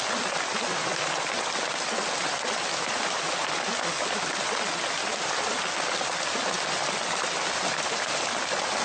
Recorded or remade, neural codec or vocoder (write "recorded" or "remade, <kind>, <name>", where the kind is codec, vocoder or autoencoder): recorded